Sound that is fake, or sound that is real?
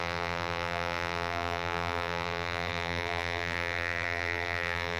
fake